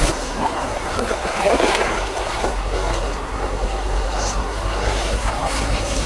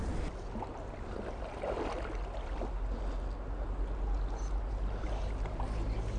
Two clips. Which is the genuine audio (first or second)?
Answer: second